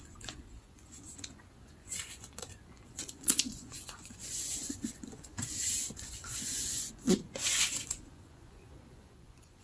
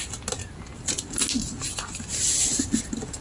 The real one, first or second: second